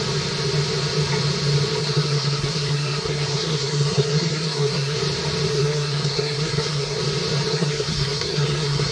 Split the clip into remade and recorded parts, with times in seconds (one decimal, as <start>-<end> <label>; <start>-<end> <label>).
0.0-1.8 recorded; 1.8-5.0 remade; 5.0-5.5 recorded; 5.5-7.0 remade; 7.0-7.5 recorded; 7.5-8.9 remade